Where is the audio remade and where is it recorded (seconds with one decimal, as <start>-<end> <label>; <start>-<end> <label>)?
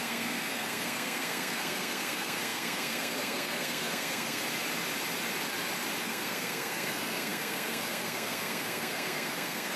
0.0-4.4 remade; 4.4-6.0 recorded; 6.0-9.8 remade